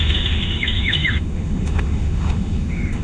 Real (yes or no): no